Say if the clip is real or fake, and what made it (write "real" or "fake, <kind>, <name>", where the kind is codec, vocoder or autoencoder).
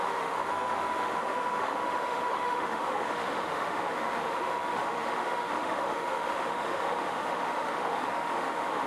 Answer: fake, autoencoder, DAC-VAE